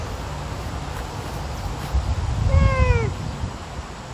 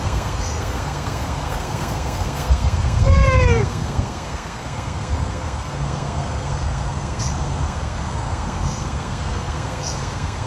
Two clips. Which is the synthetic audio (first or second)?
second